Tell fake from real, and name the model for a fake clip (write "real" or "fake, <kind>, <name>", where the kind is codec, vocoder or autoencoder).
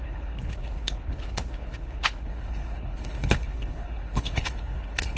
fake, codec, HILCodec